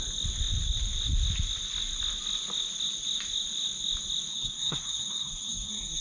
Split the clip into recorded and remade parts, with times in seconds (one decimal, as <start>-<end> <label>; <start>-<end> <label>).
0.0-4.3 recorded; 4.3-6.0 remade